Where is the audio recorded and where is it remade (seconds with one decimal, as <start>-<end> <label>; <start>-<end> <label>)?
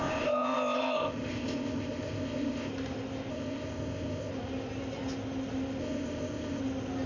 0.0-2.7 remade; 2.7-3.3 recorded; 3.3-4.3 remade; 4.3-5.8 recorded; 5.8-6.6 remade; 6.6-7.1 recorded